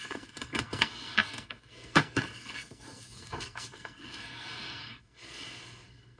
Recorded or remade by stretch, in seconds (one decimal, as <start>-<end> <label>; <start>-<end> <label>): 0.0-6.2 remade